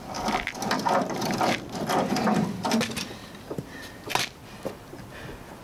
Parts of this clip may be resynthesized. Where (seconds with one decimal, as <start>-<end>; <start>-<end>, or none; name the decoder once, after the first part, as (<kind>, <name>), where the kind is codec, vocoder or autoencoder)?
3.2-3.8 (vocoder, BigVGAN v2)